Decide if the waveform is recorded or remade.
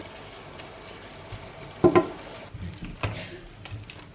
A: recorded